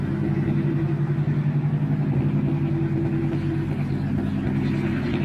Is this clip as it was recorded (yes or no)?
yes